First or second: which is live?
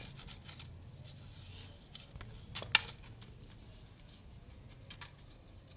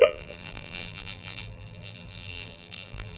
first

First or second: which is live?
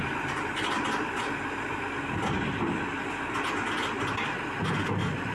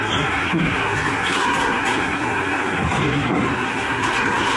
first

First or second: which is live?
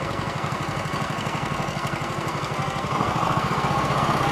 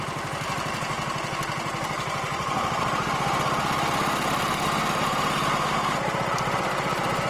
second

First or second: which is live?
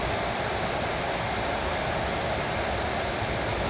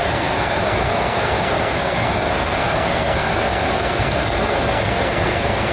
first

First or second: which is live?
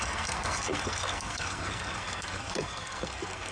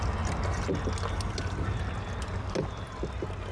second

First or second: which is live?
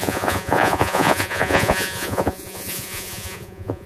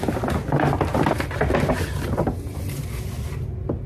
second